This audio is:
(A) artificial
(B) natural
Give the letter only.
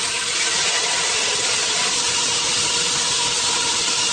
B